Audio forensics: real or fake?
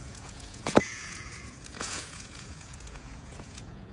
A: fake